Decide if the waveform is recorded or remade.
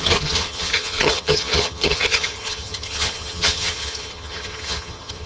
remade